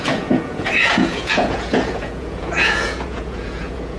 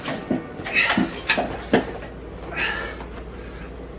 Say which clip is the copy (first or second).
first